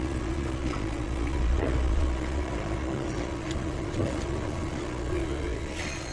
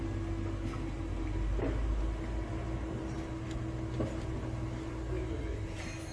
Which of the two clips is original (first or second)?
second